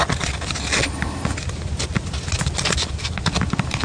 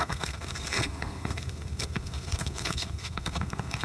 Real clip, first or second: first